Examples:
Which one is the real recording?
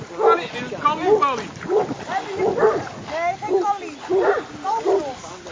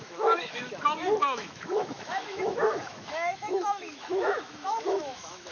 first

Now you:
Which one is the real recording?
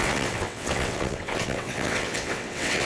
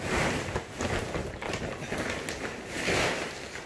second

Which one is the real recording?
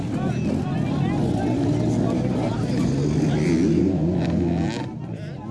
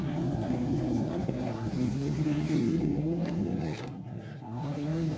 first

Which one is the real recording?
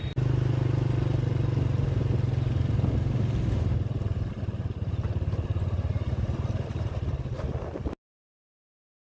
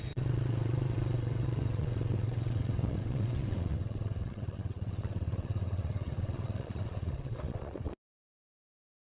first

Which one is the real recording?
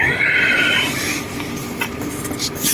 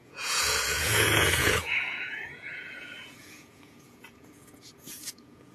first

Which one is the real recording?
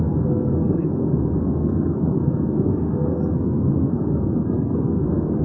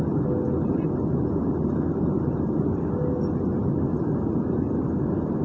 second